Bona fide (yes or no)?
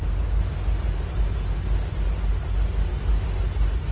yes